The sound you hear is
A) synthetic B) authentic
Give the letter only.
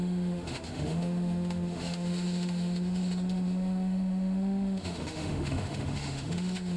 A